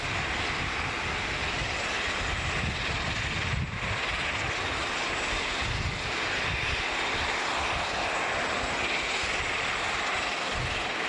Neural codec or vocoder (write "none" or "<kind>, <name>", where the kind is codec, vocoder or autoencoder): none